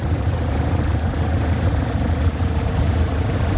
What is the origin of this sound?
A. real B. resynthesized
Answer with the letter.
B